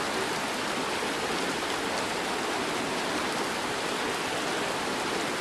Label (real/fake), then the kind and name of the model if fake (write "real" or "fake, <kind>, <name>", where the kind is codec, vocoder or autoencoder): real